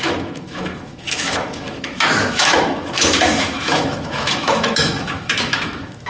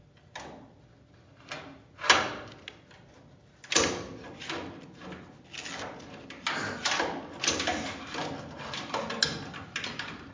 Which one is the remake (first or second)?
first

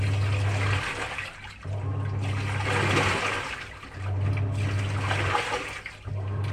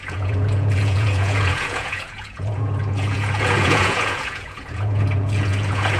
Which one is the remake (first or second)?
second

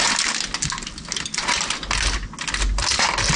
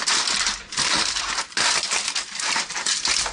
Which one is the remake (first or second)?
second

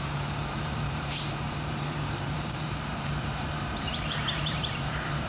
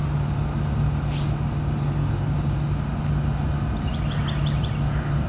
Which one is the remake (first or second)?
first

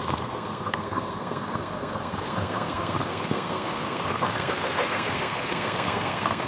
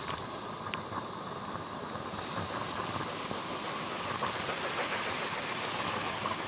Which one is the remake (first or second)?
first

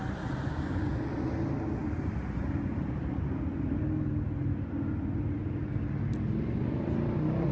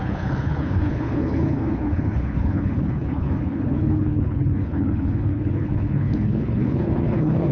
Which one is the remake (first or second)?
second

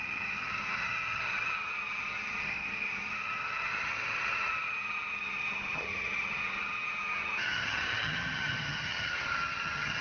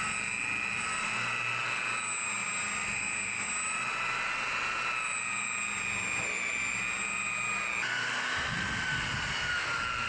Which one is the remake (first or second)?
first